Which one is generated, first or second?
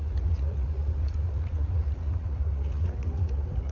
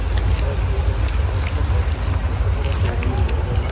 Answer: first